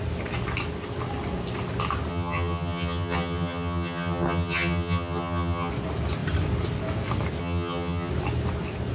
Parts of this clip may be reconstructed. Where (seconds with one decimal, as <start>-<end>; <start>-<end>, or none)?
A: 2.1-5.7; 7.4-8.1